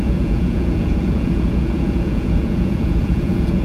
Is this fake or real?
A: fake